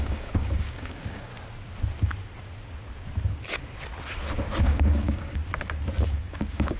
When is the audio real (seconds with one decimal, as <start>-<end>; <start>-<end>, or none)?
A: 1.3-4.6; 5.4-6.0